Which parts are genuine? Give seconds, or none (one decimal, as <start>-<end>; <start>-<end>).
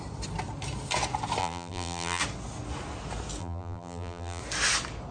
0.0-1.4; 2.2-3.4; 4.4-5.1